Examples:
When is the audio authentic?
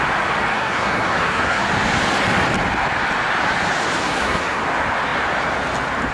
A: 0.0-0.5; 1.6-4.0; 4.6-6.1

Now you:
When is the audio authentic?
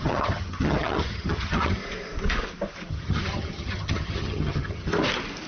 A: 1.8-2.9; 4.9-5.5